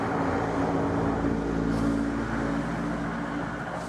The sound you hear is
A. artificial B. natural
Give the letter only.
B